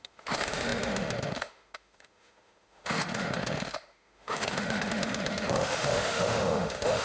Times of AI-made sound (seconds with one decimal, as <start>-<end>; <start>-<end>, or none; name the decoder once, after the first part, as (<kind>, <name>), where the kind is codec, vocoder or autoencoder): 0.0-7.0 (autoencoder, DAC-VAE)